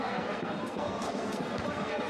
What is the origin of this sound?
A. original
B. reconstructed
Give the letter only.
B